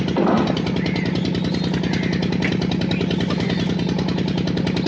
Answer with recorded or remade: recorded